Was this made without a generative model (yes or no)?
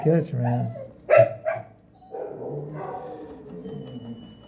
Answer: yes